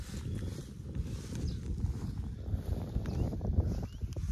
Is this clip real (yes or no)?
yes